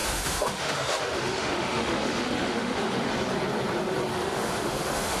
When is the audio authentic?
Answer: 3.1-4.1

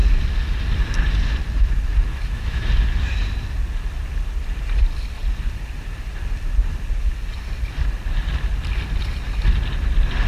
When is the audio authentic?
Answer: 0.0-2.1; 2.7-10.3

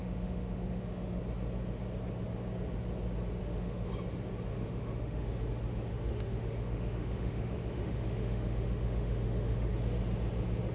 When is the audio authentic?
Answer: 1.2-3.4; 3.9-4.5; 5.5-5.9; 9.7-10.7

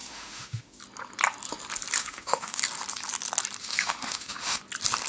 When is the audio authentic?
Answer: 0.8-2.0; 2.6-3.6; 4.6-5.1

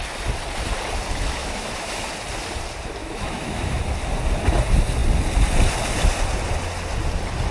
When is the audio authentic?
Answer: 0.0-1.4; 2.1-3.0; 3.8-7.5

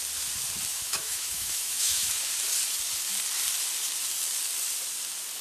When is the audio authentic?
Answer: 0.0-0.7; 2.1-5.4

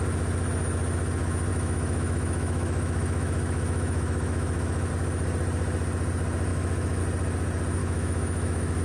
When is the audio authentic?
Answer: 0.0-1.5; 4.9-6.5; 7.0-7.8